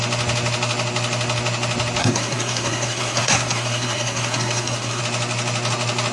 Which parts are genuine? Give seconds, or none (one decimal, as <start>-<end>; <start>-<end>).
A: 0.0-2.0; 5.0-6.1